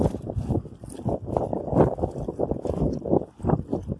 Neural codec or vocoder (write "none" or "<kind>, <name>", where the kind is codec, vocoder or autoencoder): none